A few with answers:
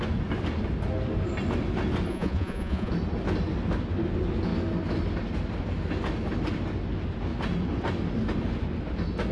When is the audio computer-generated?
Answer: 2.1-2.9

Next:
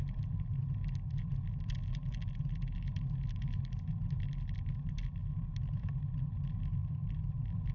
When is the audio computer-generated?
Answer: 6.8-7.7